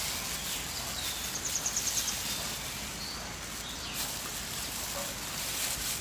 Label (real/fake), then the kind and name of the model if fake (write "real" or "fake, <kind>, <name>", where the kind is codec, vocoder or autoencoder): real